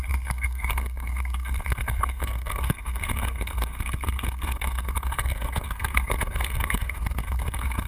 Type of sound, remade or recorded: remade